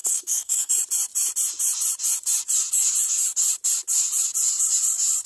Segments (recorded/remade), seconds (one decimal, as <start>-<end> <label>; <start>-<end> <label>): 0.0-0.7 remade; 0.7-5.3 recorded